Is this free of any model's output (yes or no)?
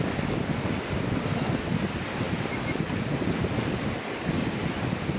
yes